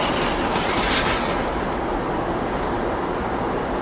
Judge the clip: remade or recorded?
recorded